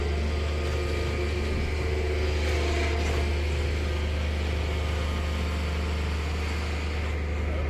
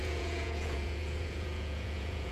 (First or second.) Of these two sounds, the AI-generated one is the second